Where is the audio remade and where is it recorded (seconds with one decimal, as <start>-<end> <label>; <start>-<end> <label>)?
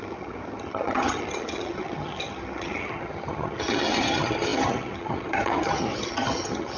0.0-6.8 remade